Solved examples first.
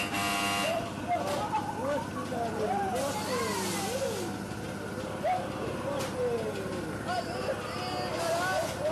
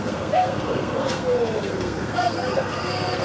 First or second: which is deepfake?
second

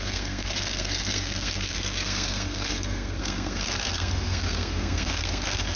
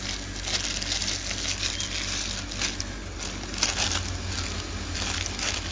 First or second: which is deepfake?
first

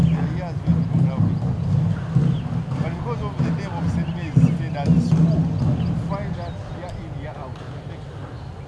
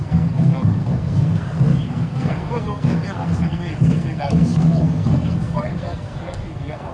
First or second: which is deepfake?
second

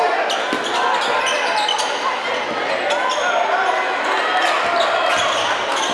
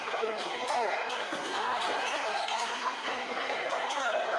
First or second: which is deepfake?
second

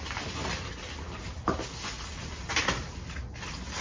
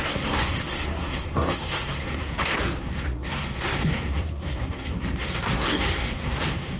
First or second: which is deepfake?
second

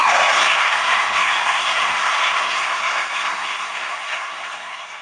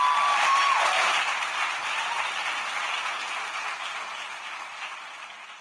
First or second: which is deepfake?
first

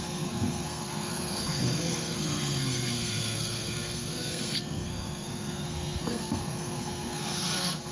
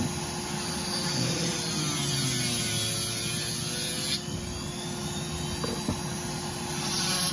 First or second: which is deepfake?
first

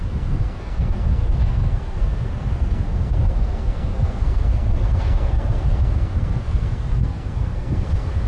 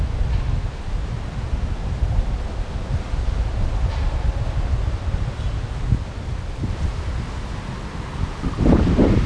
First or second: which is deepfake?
first